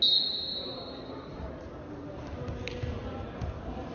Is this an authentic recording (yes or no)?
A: yes